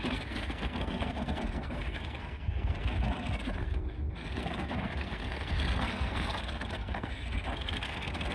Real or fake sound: fake